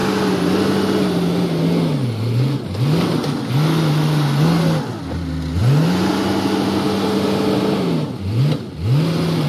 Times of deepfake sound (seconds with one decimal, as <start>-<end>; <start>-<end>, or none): 5.6-6.1